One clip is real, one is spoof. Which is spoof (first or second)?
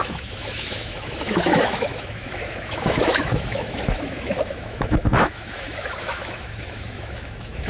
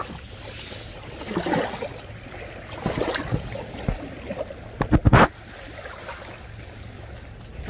first